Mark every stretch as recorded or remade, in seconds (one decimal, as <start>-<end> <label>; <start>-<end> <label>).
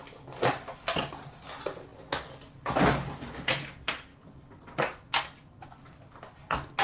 0.0-6.8 recorded